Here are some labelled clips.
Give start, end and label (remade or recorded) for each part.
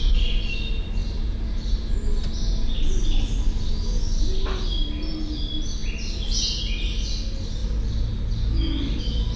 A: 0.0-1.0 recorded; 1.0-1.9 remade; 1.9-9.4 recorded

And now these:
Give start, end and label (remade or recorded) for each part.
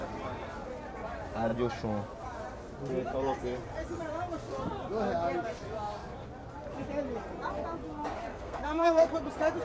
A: 0.0-8.3 recorded; 8.3-9.1 remade; 9.1-9.6 recorded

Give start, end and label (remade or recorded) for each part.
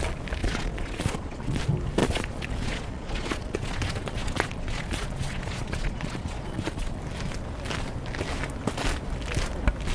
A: 0.0-0.4 recorded; 0.4-1.6 remade; 1.6-2.0 recorded; 2.0-7.0 remade; 7.0-9.9 recorded